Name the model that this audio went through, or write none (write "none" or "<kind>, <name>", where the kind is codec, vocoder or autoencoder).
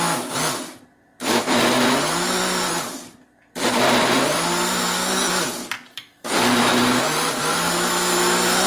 vocoder, BigVGAN v2